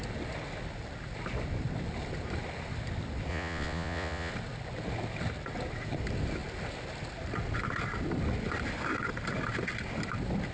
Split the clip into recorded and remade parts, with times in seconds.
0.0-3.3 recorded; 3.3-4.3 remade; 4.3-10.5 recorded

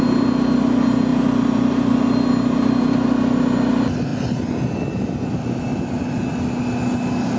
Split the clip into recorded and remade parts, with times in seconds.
0.0-7.4 recorded

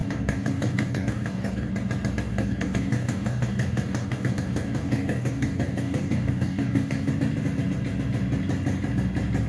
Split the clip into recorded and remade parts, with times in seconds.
0.0-1.7 remade; 1.7-2.3 recorded; 2.3-7.1 remade; 7.1-9.5 recorded

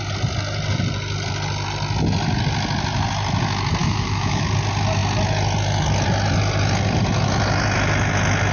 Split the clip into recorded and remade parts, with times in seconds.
0.0-3.8 recorded; 3.8-4.4 remade; 4.4-8.5 recorded

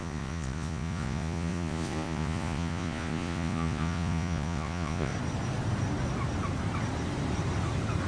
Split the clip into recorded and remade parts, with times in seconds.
0.0-5.1 remade; 5.1-8.1 recorded

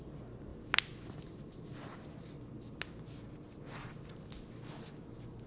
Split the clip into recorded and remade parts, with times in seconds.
0.0-5.5 recorded

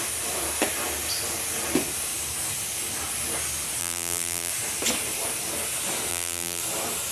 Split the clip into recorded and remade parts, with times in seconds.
0.0-3.8 recorded; 3.8-4.5 remade; 4.5-6.1 recorded; 6.1-6.6 remade; 6.6-7.1 recorded